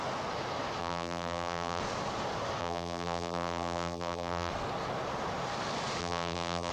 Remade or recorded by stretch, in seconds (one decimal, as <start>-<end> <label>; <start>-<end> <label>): 0.0-0.8 recorded; 0.8-1.8 remade; 1.8-2.6 recorded; 2.6-4.5 remade; 4.5-6.0 recorded; 6.0-6.7 remade

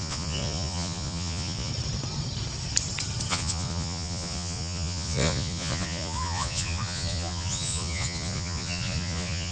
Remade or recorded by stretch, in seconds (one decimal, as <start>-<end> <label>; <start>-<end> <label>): 0.0-1.7 remade; 1.7-3.3 recorded; 3.3-9.5 remade

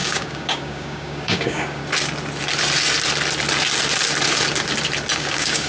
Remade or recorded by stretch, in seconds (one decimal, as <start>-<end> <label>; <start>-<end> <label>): 0.0-1.8 remade; 1.8-5.2 recorded; 5.2-5.7 remade

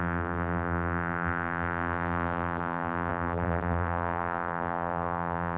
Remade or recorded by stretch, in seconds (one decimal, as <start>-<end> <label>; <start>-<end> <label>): 0.0-5.6 remade

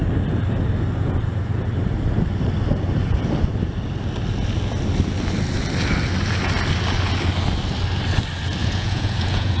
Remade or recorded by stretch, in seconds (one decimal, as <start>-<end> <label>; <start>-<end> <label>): 0.0-8.6 recorded; 8.6-9.6 remade

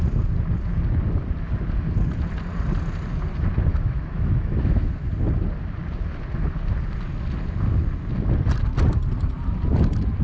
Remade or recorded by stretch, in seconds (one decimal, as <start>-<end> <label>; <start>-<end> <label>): 0.0-3.7 recorded; 3.7-5.1 remade; 5.1-10.2 recorded